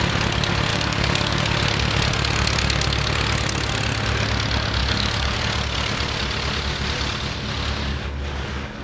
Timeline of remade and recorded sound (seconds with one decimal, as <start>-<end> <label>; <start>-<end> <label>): 0.0-0.7 recorded; 0.7-1.4 remade; 1.4-4.8 recorded; 4.8-5.4 remade; 5.4-7.9 recorded; 7.9-8.8 remade